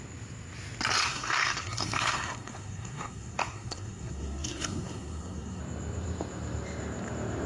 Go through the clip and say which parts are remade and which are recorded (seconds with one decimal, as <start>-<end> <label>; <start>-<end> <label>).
0.0-1.1 recorded; 1.1-5.6 remade; 5.6-7.5 recorded